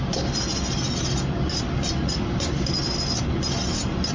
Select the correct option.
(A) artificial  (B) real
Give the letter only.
B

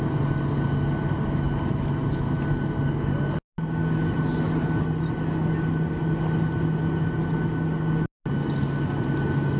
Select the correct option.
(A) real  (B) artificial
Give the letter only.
A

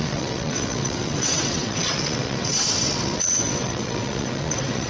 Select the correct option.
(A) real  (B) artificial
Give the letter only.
B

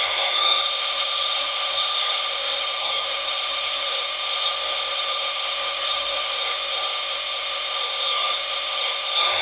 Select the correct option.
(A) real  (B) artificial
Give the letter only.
B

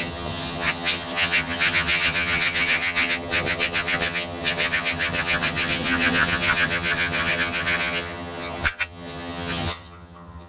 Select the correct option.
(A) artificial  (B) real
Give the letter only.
A